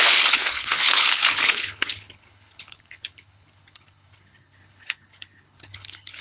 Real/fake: fake